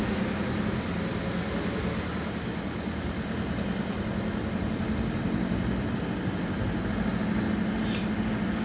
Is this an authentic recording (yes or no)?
yes